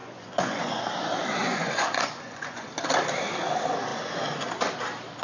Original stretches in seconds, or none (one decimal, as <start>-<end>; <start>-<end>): 0.8-1.4; 2.7-5.2